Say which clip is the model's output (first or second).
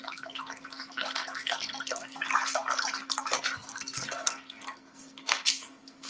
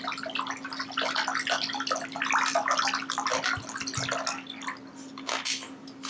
first